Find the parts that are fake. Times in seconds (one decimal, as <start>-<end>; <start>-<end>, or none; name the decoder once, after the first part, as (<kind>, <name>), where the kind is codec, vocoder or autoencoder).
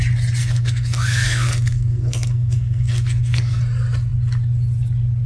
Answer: 0.4-3.6 (codec, SNAC)